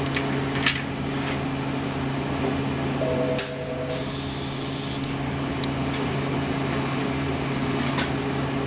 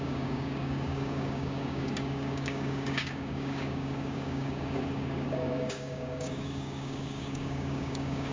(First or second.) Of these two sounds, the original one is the first